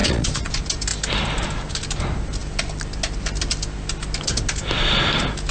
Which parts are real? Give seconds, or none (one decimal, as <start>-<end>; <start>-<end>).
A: 0.5-5.5